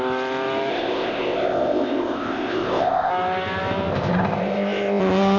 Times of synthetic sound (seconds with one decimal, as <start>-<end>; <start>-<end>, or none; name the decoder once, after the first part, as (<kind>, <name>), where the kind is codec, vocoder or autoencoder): 0.7-3.1 (codec, ZipCodec); 3.9-5.0